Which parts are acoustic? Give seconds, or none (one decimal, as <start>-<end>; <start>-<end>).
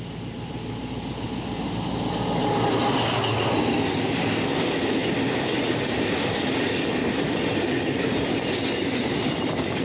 0.0-9.8